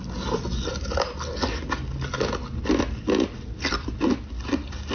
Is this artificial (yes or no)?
no